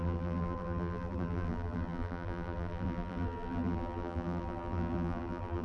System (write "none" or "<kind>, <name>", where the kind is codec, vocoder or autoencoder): vocoder, BigVGAN v2